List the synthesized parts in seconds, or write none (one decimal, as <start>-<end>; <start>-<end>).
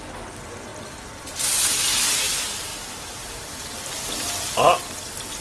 0.7-2.2